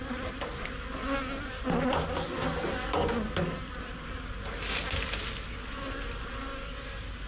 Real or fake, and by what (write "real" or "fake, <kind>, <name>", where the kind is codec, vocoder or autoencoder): real